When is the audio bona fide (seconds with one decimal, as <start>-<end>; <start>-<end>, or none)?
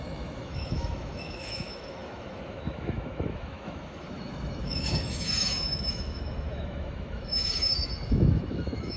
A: none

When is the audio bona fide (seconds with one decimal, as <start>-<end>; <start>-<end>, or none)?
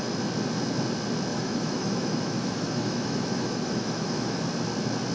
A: 0.0-1.3; 4.4-5.1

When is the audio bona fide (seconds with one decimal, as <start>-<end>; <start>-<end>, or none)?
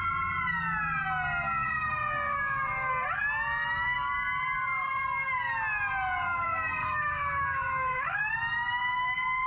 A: 0.0-2.3; 2.9-6.8; 8.3-9.5